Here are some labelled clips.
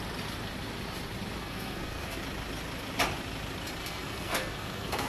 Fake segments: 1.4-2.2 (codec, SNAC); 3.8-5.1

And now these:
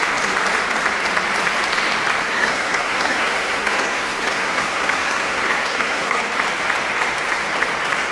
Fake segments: 2.2-6.2 (codec, SNAC)

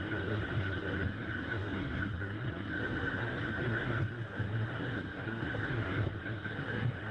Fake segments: 0.0-7.1 (codec, SNAC)

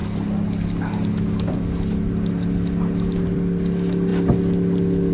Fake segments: none